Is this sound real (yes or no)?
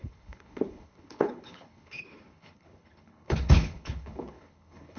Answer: no